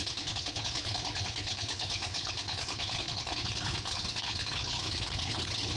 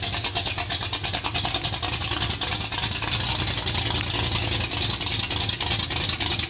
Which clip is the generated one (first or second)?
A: first